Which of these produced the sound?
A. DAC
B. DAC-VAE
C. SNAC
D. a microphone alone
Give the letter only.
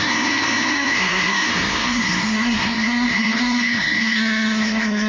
C